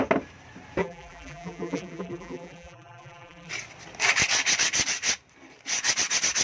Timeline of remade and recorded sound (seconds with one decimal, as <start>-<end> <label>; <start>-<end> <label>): 0.0-0.8 recorded; 0.8-3.5 remade; 3.5-6.4 recorded